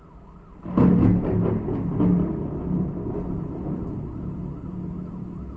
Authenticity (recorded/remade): recorded